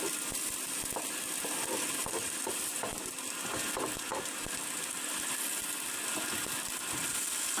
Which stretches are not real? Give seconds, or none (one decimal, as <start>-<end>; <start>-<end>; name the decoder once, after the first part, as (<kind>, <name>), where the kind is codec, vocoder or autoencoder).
none